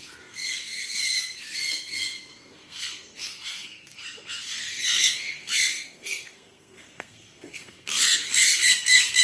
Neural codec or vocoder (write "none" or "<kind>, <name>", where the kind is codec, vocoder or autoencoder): codec, SNAC